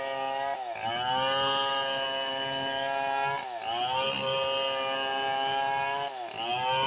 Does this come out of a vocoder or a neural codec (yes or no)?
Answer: no